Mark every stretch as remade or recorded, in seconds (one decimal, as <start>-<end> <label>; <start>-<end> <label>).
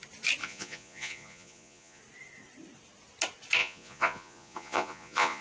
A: 0.0-0.4 recorded; 0.4-2.0 remade; 2.0-3.6 recorded; 3.6-5.4 remade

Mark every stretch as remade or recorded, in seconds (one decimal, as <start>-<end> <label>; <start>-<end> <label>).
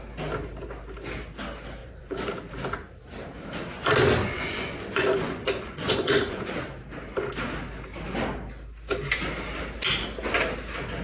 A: 0.0-1.8 recorded; 1.8-2.3 remade; 2.3-4.2 recorded; 4.2-6.4 remade; 6.4-11.0 recorded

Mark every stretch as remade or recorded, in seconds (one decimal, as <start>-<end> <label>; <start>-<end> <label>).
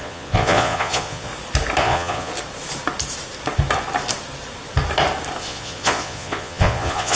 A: 0.0-1.3 remade; 1.3-1.8 recorded; 1.8-2.3 remade; 2.3-5.4 recorded; 5.4-7.2 remade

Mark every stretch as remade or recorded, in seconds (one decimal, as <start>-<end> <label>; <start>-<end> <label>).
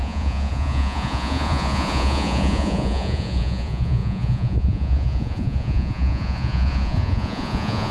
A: 0.0-7.9 remade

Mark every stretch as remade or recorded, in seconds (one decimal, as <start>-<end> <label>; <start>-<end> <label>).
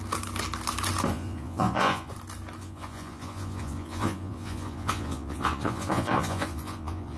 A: 0.0-1.1 recorded; 1.1-2.1 remade; 2.1-2.6 recorded; 2.6-7.2 remade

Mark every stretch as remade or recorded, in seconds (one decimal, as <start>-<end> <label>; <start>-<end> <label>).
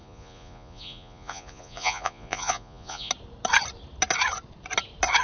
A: 0.0-3.1 remade; 3.1-5.2 recorded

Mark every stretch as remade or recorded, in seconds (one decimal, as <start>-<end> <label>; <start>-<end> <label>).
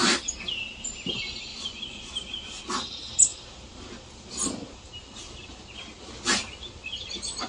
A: 0.0-1.5 recorded; 1.5-2.1 remade; 2.1-7.5 recorded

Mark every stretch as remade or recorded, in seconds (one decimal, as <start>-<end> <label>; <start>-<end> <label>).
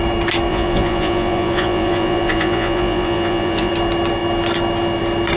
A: 0.0-0.5 recorded; 0.5-3.7 remade; 3.7-5.4 recorded